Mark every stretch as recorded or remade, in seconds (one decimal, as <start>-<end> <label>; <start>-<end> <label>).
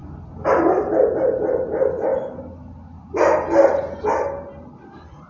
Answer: 0.0-5.3 recorded